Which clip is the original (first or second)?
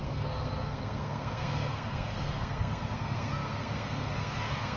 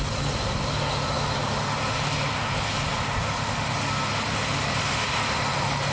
second